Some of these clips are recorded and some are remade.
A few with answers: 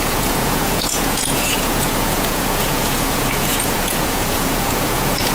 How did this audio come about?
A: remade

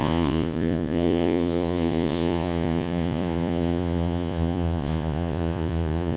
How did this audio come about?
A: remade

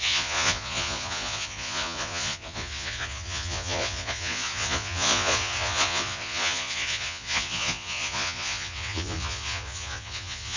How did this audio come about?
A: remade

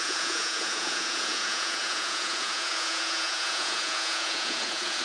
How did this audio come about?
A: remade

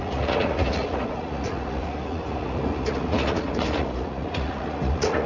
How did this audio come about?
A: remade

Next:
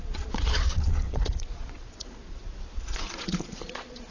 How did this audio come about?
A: remade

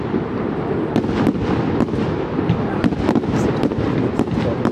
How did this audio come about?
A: recorded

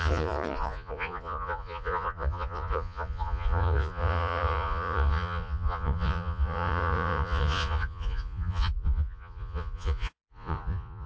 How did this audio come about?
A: remade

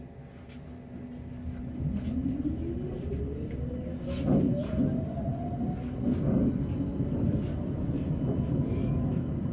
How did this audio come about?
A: recorded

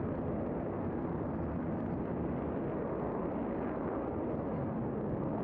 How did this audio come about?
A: recorded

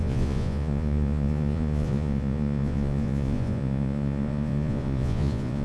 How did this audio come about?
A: remade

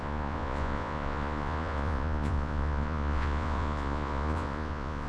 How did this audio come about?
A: remade